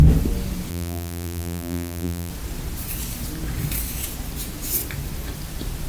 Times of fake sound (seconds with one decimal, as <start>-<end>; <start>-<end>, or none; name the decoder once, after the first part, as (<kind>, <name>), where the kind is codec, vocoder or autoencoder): 0.7-2.3 (vocoder, BigVGAN v2)